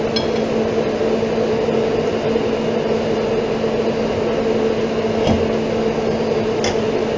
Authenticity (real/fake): real